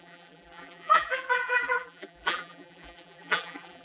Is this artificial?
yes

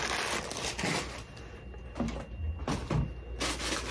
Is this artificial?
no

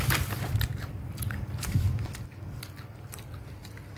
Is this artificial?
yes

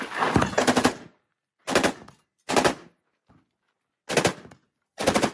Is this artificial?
no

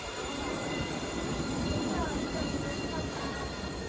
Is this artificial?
yes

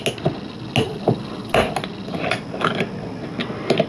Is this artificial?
no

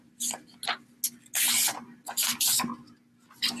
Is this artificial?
no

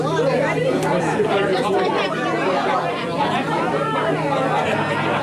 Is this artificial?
no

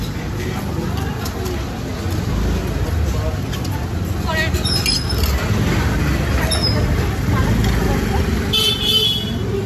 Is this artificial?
no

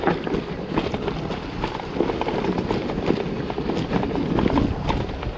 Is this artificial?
no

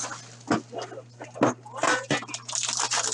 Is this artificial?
no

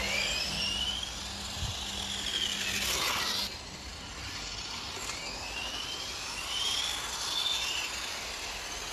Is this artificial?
no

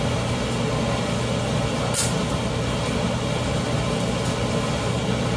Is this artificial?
no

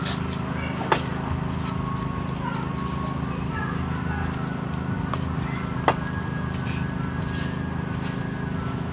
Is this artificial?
no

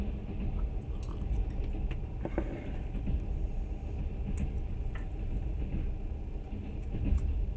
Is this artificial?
no